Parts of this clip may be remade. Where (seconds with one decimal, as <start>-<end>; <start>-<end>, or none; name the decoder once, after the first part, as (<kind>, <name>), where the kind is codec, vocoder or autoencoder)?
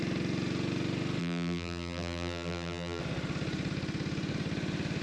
1.2-3.0 (vocoder, BigVGAN v2)